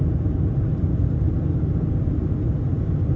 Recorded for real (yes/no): yes